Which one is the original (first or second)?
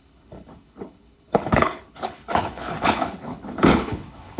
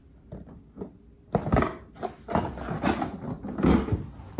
second